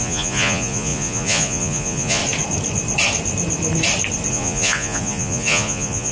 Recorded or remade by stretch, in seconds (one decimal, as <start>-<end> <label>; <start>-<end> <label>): 0.0-2.2 remade; 2.2-4.3 recorded; 4.3-6.1 remade

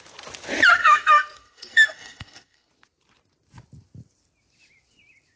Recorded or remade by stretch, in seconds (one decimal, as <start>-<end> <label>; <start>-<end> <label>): 0.0-0.8 recorded; 0.8-2.7 remade; 2.7-5.4 recorded

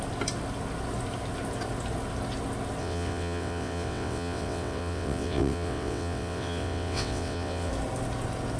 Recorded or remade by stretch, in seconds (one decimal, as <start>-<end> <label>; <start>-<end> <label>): 0.0-2.8 recorded; 2.8-7.7 remade; 7.7-8.6 recorded

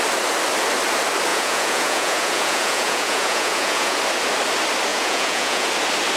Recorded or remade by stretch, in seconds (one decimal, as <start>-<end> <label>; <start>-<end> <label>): 0.0-1.3 recorded; 1.3-4.0 remade; 4.0-4.9 recorded; 4.9-5.7 remade; 5.7-6.2 recorded

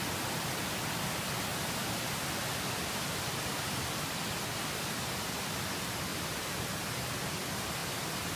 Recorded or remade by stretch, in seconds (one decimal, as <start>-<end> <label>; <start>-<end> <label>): 0.0-8.4 recorded

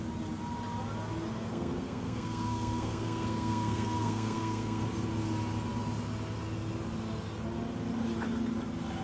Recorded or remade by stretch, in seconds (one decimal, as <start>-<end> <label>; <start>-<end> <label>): 0.0-1.5 recorded; 1.5-4.8 remade; 4.8-9.0 recorded

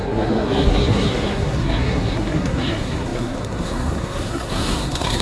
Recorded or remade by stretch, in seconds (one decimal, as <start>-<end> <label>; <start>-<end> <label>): 0.0-5.2 remade

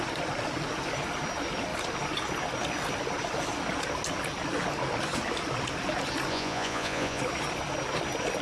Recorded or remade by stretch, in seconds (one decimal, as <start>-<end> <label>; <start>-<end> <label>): 0.0-6.3 recorded; 6.3-7.2 remade; 7.2-8.4 recorded